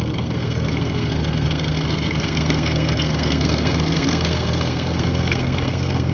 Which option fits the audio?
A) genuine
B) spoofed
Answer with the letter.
B